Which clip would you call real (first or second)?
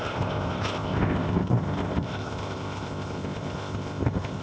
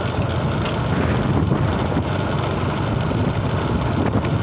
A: second